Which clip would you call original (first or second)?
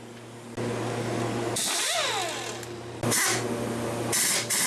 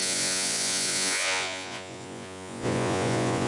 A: first